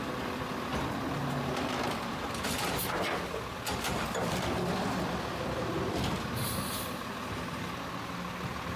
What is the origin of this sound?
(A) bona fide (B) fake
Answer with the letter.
A